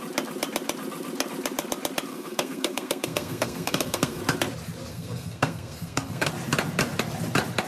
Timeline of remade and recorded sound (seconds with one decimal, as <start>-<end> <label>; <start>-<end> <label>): 0.0-2.1 recorded; 2.1-4.2 remade; 4.2-4.9 recorded; 4.9-6.3 remade; 6.3-7.7 recorded